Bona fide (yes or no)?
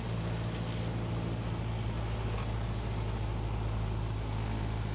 yes